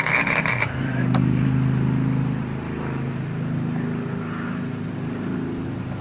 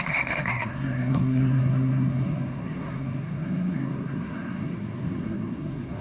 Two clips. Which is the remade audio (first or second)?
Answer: second